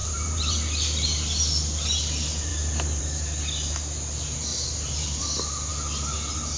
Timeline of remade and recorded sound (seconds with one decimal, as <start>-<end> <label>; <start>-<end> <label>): 0.0-0.6 remade; 0.6-4.5 recorded; 4.5-5.2 remade; 5.2-6.6 recorded